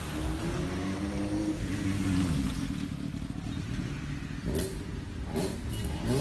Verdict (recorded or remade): recorded